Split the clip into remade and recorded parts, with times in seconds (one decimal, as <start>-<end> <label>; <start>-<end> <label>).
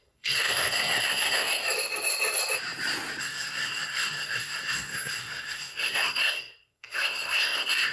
0.0-1.6 remade; 1.6-3.2 recorded; 3.2-7.9 remade